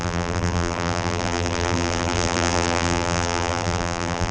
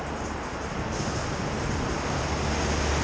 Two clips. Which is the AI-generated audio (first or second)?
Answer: first